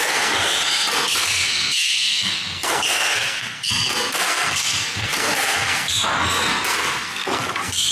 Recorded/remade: remade